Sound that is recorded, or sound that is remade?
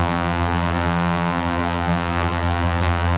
remade